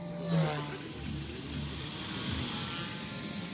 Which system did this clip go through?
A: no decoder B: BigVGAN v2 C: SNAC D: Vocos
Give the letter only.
A